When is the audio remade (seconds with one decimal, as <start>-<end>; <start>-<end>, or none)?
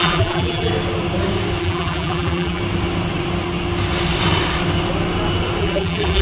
0.0-0.7; 1.6-2.6; 5.6-6.2